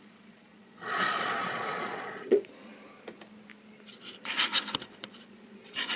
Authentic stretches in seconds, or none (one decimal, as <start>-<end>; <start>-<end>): 2.7-3.9; 4.5-5.0